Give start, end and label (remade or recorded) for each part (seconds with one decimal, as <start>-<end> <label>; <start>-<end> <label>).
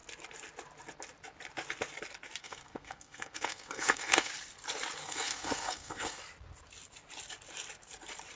0.0-2.4 recorded; 2.4-4.3 remade; 4.3-5.0 recorded; 5.0-6.2 remade; 6.2-8.4 recorded